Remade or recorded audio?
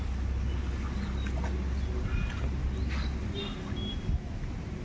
recorded